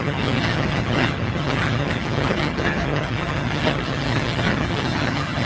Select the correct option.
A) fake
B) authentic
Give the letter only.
A